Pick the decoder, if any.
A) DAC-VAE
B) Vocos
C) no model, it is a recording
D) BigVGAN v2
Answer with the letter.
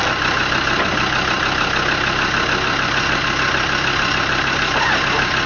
C